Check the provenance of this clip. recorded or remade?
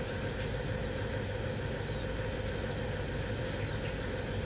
recorded